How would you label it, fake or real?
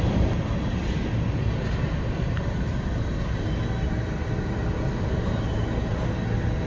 real